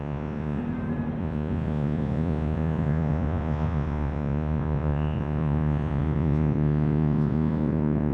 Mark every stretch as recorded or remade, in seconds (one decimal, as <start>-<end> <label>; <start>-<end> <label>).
0.0-0.6 remade; 0.6-1.2 recorded; 1.2-8.1 remade